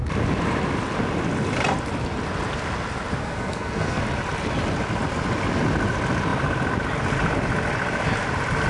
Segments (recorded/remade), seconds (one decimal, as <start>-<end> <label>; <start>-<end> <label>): 0.0-3.2 recorded; 3.2-4.0 remade; 4.0-8.7 recorded